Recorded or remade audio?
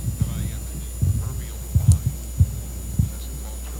recorded